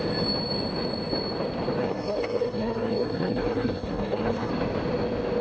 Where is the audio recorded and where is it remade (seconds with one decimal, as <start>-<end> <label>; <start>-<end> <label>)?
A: 0.0-1.8 recorded; 1.8-4.5 remade; 4.5-5.4 recorded